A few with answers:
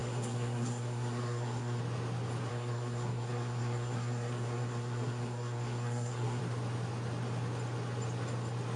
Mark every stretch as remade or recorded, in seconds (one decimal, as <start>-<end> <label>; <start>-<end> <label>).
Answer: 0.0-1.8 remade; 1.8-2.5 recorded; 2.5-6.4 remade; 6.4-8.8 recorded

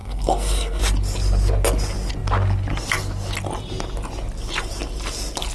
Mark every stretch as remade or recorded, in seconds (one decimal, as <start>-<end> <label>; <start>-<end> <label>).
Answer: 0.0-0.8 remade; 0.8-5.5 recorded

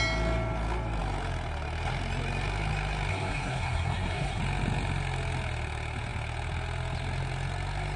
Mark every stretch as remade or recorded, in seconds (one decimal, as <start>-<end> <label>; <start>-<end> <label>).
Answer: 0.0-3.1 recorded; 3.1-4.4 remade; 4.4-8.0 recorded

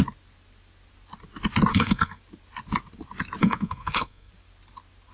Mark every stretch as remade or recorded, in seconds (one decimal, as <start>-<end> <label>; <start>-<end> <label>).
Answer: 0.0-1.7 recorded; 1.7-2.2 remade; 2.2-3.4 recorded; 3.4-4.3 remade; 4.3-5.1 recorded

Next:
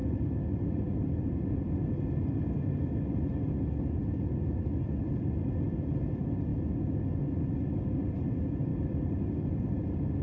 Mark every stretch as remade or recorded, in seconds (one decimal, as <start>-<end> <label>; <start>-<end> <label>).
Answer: 0.0-10.2 recorded

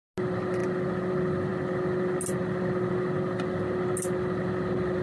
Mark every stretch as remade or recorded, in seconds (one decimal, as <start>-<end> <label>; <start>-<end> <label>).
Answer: 0.0-5.0 recorded